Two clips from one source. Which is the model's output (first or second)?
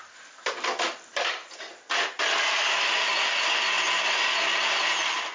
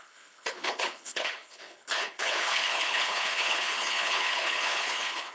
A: second